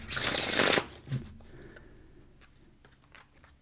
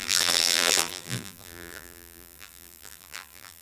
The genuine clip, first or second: first